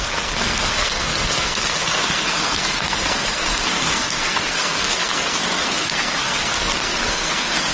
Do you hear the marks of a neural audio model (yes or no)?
yes